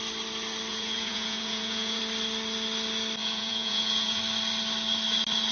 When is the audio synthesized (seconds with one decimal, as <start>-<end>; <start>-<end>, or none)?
0.7-2.0; 3.2-4.2